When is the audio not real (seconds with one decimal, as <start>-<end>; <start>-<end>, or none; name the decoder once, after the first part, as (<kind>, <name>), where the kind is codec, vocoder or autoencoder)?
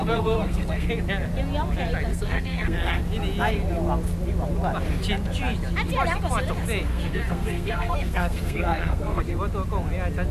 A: 0.0-0.9 (codec, SNAC); 2.1-3.0; 6.9-9.2